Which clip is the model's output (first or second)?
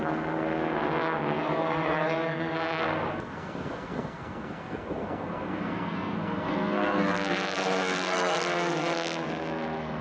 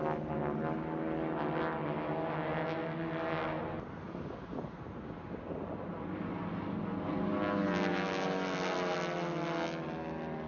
first